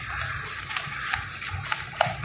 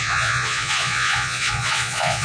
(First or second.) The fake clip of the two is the second